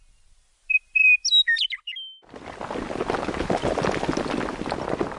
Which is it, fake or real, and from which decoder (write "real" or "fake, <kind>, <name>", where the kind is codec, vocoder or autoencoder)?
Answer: real